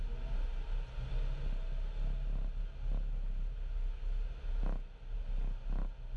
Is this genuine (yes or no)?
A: yes